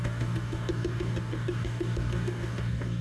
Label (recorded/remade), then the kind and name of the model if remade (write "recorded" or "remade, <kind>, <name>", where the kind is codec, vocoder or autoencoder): remade, codec, DAC